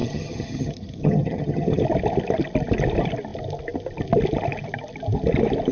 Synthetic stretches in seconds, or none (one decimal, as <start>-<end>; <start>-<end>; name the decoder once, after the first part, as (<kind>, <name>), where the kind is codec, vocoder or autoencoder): 0.0-1.8 (vocoder, HiFi-GAN)